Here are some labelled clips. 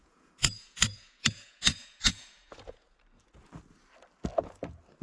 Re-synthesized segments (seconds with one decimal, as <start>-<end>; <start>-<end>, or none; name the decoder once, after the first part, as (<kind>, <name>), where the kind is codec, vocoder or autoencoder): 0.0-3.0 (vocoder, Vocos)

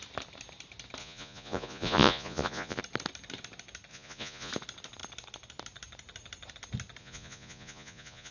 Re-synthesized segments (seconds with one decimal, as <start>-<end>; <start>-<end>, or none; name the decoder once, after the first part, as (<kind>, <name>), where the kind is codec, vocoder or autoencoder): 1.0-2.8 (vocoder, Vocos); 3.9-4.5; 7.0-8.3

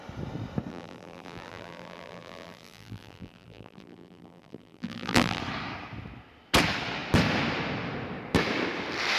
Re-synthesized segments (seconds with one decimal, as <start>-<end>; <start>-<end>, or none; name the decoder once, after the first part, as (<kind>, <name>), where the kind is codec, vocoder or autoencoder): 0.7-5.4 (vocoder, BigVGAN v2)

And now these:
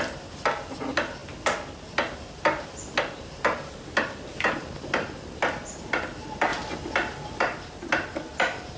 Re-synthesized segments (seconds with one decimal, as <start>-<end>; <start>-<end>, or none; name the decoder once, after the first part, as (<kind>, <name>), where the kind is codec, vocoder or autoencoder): none